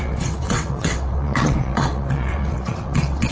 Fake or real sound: fake